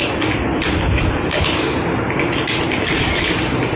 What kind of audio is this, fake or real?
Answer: real